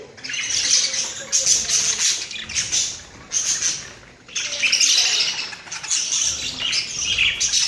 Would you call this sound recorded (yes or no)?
yes